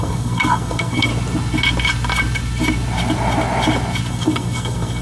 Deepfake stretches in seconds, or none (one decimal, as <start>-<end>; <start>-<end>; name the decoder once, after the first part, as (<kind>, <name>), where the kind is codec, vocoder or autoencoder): 0.0-1.1 (codec, SNAC); 4.1-5.0